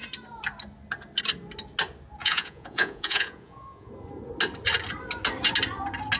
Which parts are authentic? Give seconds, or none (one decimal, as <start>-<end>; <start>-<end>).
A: 0.0-2.2; 3.9-6.2